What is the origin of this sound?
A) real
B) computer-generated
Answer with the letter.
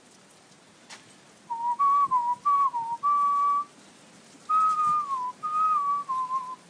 A